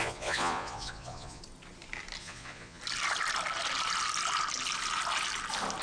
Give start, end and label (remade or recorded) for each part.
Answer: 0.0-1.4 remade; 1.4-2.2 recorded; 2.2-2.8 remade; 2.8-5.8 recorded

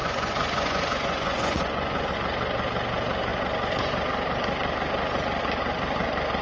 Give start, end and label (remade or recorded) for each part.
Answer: 0.0-2.1 remade; 2.1-6.4 recorded

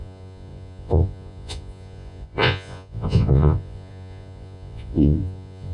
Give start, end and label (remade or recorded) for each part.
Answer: 0.0-5.7 remade

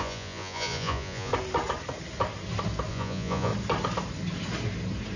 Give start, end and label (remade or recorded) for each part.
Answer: 0.0-1.3 remade; 1.3-2.9 recorded; 2.9-3.5 remade; 3.5-5.2 recorded

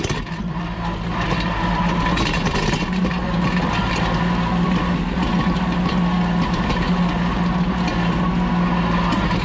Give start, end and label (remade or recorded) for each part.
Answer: 0.0-9.4 recorded

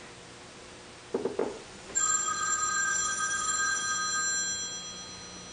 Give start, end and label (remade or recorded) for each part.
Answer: 0.0-1.4 recorded; 1.4-3.8 remade; 3.8-5.5 recorded

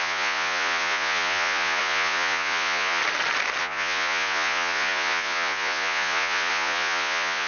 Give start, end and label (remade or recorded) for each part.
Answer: 0.0-3.0 remade; 3.0-3.6 recorded; 3.6-7.5 remade